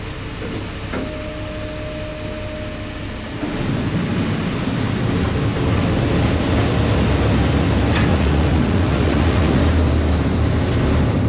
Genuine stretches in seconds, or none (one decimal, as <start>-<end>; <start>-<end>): 0.0-8.1; 9.6-11.3